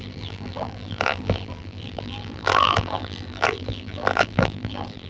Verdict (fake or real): fake